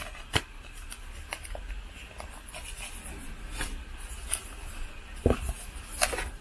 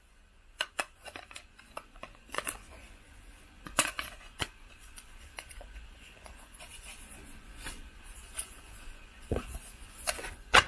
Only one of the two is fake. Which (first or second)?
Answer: second